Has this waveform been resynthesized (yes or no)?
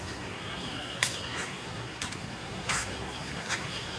yes